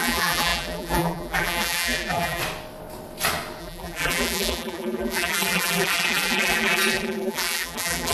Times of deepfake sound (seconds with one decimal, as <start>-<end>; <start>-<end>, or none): 0.0-2.4; 3.6-8.1